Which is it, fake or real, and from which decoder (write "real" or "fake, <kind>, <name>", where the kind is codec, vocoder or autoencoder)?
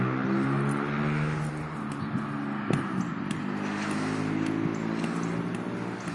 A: real